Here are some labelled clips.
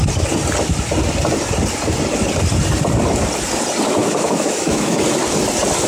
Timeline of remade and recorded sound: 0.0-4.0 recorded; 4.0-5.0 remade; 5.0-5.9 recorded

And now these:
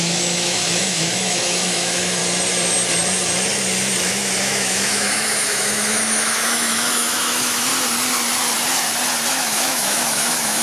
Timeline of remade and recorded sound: 0.0-2.2 remade; 2.2-4.0 recorded; 4.0-7.7 remade; 7.7-9.3 recorded; 9.3-10.6 remade

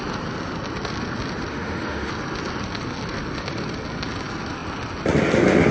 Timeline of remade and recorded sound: 0.0-1.5 recorded; 1.5-2.1 remade; 2.1-5.7 recorded

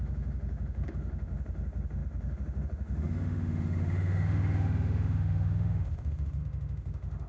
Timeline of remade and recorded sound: 0.0-7.3 remade